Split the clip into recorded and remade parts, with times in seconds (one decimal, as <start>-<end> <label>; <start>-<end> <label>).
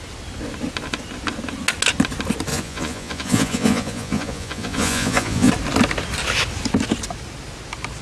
0.0-2.5 recorded; 2.5-5.5 remade; 5.5-8.0 recorded